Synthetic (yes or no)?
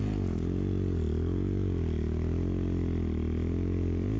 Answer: no